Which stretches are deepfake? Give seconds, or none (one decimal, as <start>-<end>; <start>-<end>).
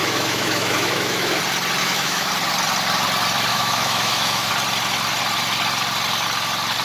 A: 0.0-1.4; 1.8-2.3; 3.5-4.5